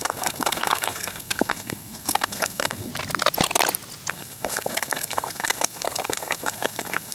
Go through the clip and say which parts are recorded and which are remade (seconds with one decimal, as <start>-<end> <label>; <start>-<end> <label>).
0.0-2.9 remade; 2.9-4.1 recorded; 4.1-7.1 remade